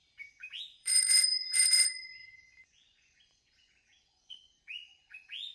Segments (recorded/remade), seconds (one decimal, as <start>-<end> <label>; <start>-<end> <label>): 0.0-5.5 remade

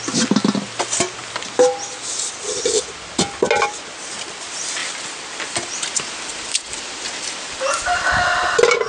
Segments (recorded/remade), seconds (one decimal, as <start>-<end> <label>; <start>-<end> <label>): 0.0-4.8 recorded; 4.8-8.1 remade; 8.1-8.9 recorded

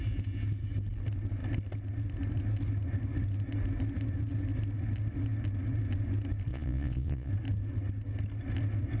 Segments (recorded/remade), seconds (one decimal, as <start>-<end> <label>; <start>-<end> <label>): 0.0-6.5 recorded; 6.5-7.3 remade; 7.3-9.0 recorded